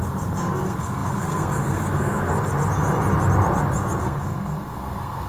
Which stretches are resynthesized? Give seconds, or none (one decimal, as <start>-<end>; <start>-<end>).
0.0-2.3; 4.0-5.3